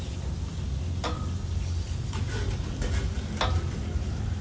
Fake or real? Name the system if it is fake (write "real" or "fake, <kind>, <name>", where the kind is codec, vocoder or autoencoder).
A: real